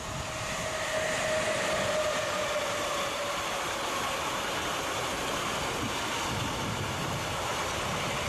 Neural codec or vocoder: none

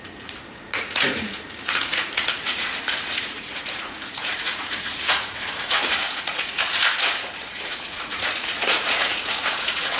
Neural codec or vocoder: vocoder, Vocos